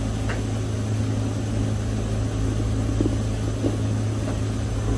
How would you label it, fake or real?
real